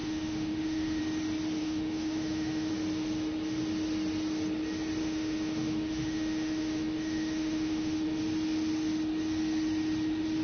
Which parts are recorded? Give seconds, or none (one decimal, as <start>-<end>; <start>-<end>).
1.0-1.6; 2.7-5.0; 8.2-10.4